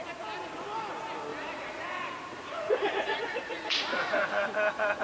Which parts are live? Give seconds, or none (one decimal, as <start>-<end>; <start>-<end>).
0.0-1.3; 4.3-5.0